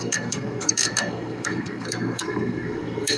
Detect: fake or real fake